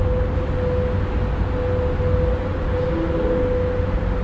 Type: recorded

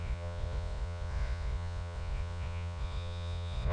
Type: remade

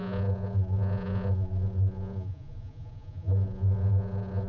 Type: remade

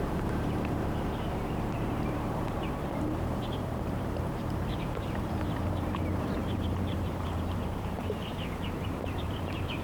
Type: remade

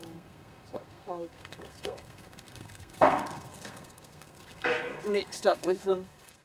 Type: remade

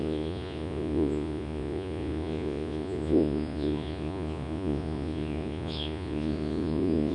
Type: remade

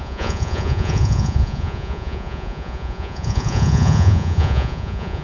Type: remade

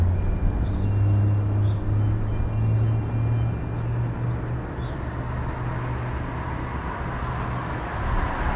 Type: recorded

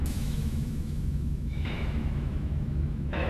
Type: remade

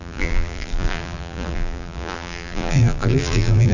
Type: remade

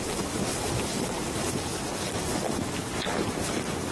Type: recorded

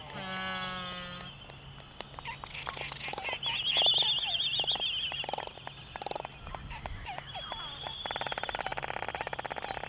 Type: recorded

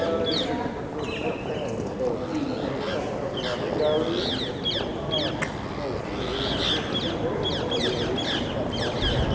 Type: recorded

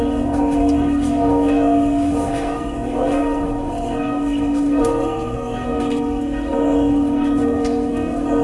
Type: remade